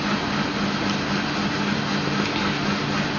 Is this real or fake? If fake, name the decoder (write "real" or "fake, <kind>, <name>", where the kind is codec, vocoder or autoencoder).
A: real